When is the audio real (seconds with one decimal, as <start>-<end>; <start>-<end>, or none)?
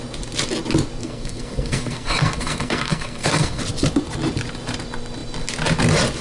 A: 0.0-1.0; 3.6-6.2